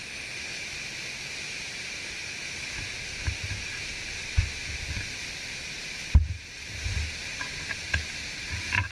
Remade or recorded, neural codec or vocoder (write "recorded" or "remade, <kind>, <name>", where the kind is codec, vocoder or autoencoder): recorded